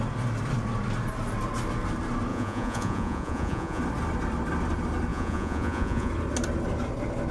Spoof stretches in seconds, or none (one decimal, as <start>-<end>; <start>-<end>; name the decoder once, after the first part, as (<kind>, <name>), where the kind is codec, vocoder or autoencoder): 2.3-3.8 (vocoder, Vocos); 5.1-6.1